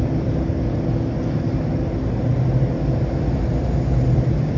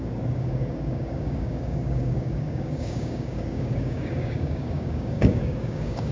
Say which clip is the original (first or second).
first